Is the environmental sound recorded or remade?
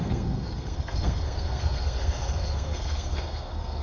remade